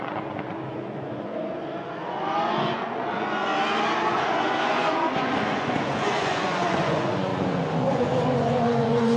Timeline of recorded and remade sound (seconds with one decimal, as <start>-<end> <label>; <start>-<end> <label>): 0.0-3.5 remade; 3.5-4.1 recorded; 4.1-9.2 remade